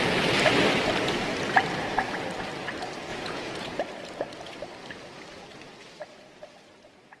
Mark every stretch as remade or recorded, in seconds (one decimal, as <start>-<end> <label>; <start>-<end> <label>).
0.0-3.1 recorded; 3.1-3.8 remade; 3.8-7.2 recorded